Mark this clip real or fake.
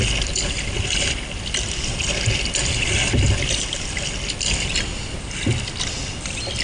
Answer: real